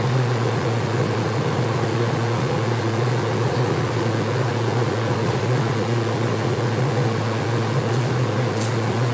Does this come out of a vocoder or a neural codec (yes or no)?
yes